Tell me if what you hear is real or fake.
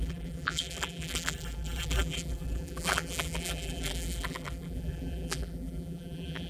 fake